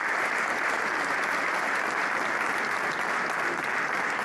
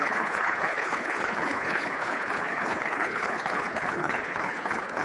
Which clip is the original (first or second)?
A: first